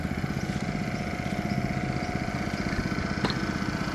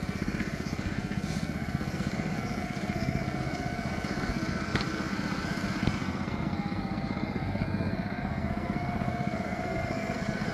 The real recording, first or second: first